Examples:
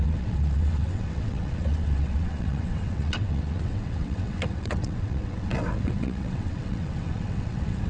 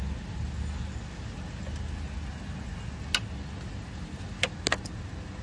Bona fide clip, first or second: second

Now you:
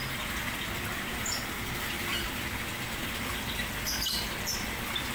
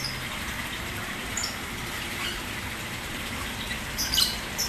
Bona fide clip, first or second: first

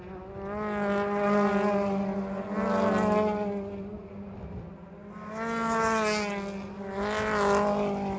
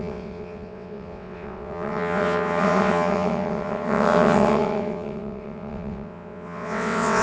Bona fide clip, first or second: first